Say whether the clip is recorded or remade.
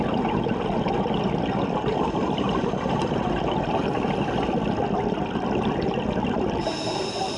recorded